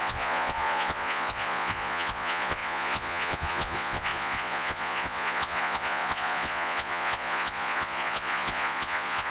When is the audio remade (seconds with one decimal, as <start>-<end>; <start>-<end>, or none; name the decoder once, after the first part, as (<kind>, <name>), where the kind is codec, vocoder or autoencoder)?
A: 0.0-9.3 (vocoder, Vocos)